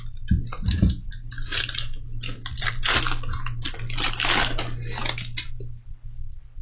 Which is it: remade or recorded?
recorded